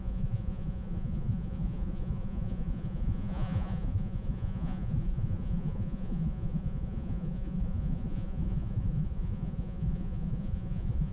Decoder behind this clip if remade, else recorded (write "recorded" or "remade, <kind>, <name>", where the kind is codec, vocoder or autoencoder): remade, vocoder, Vocos